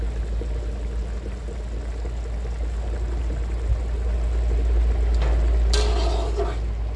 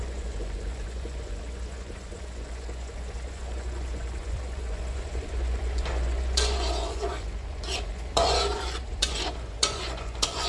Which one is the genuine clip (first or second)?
first